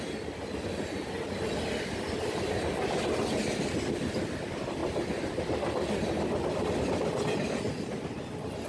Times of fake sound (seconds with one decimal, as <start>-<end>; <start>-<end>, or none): none